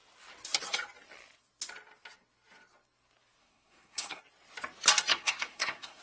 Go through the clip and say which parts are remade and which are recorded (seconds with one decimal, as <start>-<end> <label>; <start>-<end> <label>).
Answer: 0.0-3.4 recorded; 3.4-4.2 remade; 4.2-5.1 recorded; 5.1-6.0 remade